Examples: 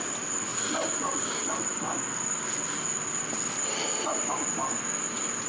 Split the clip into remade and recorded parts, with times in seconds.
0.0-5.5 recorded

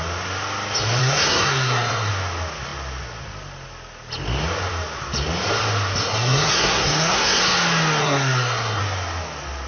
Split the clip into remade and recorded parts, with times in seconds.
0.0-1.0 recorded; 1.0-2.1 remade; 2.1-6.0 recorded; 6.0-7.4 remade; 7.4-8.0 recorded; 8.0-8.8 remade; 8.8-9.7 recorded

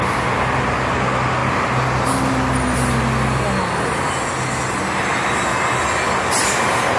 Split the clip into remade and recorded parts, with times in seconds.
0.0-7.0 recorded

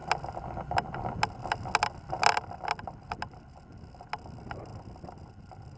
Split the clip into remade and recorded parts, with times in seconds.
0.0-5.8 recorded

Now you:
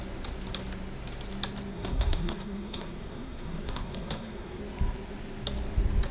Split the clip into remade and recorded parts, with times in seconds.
0.0-1.7 recorded; 1.7-4.6 remade; 4.6-6.1 recorded

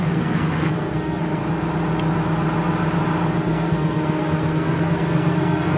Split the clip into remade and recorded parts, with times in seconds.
0.0-1.4 remade; 1.4-3.4 recorded; 3.4-5.8 remade

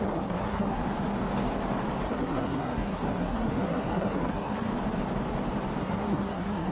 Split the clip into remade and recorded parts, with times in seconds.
0.0-0.8 remade; 0.8-2.1 recorded; 2.1-4.7 remade; 4.7-5.8 recorded; 5.8-6.7 remade